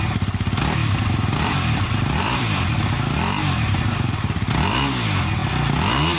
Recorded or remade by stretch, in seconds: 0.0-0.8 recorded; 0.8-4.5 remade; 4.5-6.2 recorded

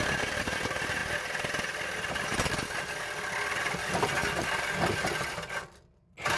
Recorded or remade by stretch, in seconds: 0.0-6.4 recorded